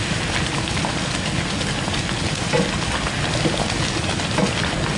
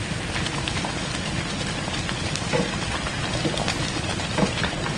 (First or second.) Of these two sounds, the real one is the first